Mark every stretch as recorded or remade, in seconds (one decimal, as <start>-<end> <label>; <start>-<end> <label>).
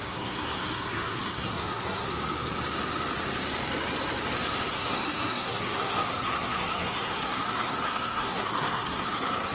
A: 0.0-2.1 remade; 2.1-4.7 recorded; 4.7-9.5 remade